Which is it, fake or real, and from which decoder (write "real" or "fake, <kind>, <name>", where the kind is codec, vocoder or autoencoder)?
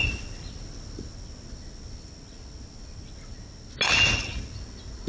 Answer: real